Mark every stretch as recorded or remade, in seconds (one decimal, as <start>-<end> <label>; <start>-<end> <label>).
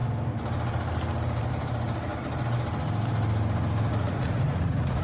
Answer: 0.0-3.9 recorded; 3.9-5.0 remade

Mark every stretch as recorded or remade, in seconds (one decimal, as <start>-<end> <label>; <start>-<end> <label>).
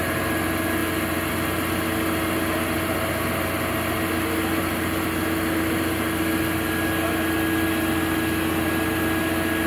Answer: 0.0-9.7 recorded